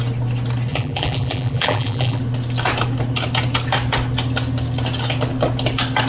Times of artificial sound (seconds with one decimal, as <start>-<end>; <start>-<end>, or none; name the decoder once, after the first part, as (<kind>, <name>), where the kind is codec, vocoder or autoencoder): 0.7-2.2 (vocoder, BigVGAN v2)

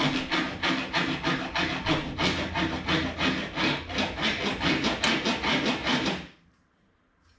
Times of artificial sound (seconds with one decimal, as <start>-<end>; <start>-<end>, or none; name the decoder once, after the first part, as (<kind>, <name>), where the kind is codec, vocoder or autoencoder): 5.8-7.4 (vocoder, BigVGAN v2)

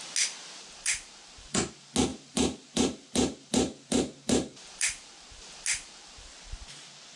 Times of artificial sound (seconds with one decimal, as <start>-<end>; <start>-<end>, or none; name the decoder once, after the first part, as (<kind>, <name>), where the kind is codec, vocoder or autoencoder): 2.1-5.1 (vocoder, BigVGAN v2)

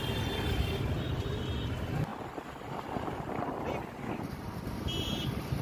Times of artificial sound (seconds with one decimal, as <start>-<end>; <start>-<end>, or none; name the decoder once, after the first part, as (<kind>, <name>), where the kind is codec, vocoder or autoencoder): none

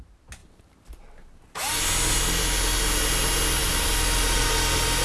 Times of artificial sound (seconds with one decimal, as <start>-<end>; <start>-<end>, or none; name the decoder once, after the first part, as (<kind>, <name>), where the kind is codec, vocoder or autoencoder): 3.6-4.5 (vocoder, BigVGAN v2)

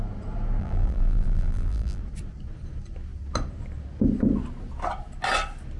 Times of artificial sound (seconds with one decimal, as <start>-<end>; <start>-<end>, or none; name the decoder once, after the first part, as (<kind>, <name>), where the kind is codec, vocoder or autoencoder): 0.6-2.0 (vocoder, BigVGAN v2)